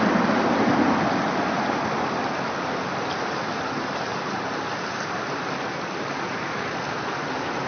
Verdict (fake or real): real